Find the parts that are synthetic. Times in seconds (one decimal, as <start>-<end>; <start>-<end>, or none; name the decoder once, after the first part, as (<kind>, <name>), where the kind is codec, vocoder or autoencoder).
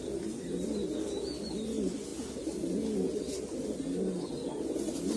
none